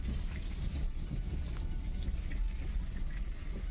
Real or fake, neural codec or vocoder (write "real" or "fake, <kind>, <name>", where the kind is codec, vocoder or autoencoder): real